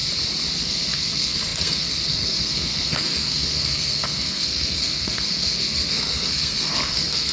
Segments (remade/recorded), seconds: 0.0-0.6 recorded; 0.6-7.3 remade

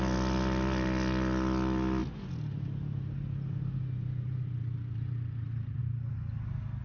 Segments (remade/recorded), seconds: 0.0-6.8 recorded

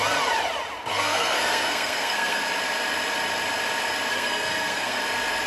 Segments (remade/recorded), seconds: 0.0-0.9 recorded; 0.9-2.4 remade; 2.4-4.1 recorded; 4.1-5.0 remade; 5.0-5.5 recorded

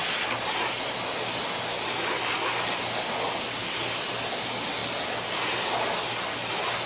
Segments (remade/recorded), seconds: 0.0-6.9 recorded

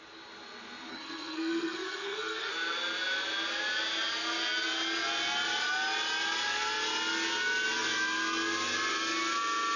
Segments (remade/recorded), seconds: 0.0-0.9 recorded; 0.9-2.5 remade; 2.5-9.8 recorded

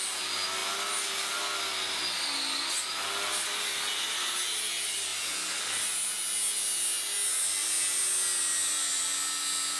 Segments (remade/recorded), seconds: 0.0-9.8 recorded